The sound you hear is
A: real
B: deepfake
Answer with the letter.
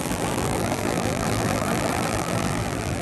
B